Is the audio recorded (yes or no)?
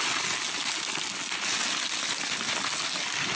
yes